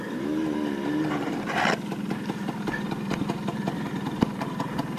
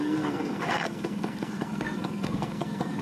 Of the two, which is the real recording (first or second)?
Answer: first